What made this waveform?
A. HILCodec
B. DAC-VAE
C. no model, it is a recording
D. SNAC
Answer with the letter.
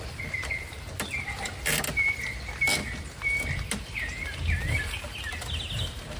C